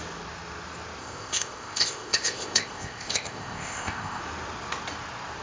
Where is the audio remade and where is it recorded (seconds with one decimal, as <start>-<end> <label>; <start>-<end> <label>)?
0.0-1.0 recorded; 1.0-4.2 remade; 4.2-5.4 recorded